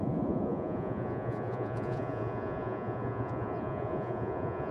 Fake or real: fake